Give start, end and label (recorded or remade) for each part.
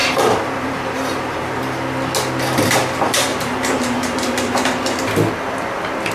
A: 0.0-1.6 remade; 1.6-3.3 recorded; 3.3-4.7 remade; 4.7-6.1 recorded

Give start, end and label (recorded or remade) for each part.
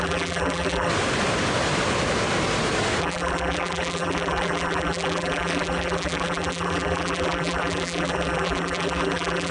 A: 0.0-0.9 remade; 0.9-3.0 recorded; 3.0-9.5 remade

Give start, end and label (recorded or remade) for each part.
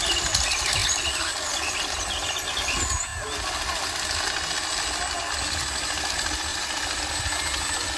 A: 0.0-6.5 recorded; 6.5-7.1 remade; 7.1-8.0 recorded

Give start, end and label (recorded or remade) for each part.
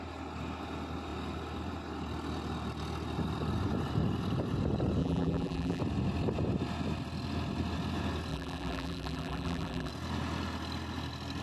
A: 0.0-5.0 recorded; 5.0-5.8 remade; 5.8-8.3 recorded; 8.3-9.9 remade; 9.9-11.4 recorded